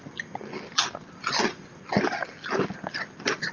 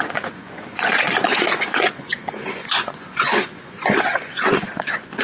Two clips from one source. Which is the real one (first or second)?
first